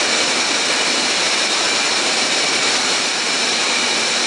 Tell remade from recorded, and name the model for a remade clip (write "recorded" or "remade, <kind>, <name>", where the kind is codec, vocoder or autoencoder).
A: remade, vocoder, BigVGAN v2